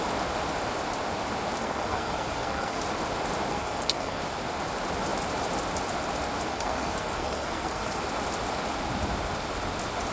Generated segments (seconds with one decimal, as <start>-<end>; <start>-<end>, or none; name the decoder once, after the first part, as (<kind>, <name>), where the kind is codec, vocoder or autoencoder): 1.6-2.8 (codec, SNAC); 3.5-4.2; 6.5-8.0